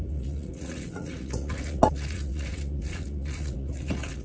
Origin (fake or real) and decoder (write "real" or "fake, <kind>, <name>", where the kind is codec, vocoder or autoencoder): fake, vocoder, Vocos